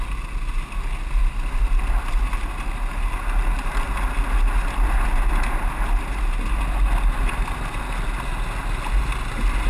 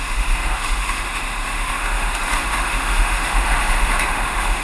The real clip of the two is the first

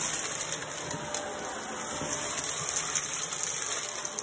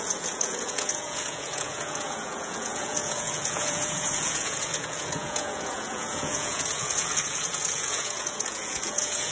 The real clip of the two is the first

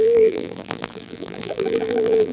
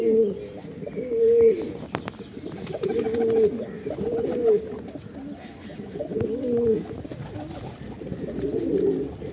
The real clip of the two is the second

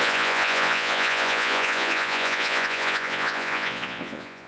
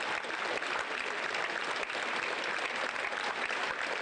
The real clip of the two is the second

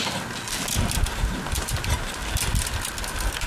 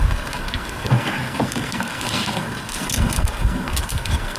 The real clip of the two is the first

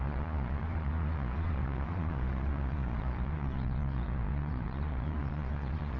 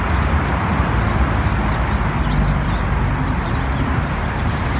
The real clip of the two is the second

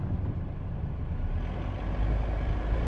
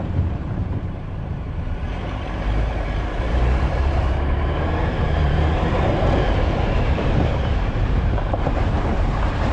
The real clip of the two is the first